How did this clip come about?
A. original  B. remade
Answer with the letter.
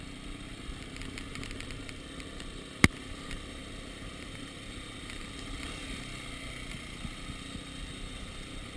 A